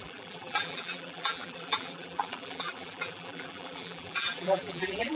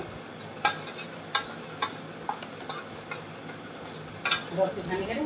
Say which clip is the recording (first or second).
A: second